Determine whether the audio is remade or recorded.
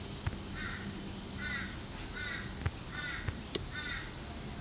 recorded